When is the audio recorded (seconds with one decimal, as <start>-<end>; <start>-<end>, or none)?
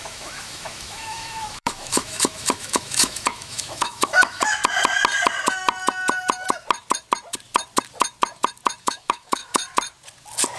4.6-8.8; 9.6-10.6